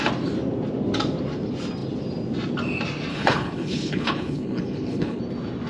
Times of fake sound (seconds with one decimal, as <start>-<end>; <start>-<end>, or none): 3.1-5.2